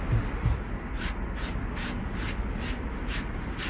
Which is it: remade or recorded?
recorded